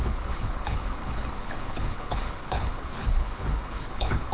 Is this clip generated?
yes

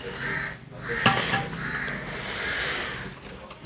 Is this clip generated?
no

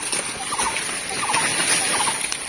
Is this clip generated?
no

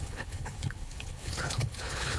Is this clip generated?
yes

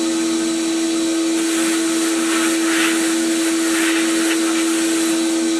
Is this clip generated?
no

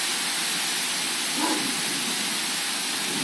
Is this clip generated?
no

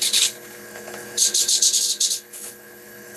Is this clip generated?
yes